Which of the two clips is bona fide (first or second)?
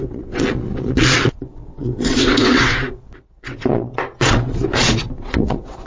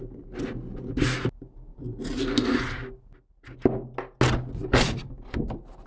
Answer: second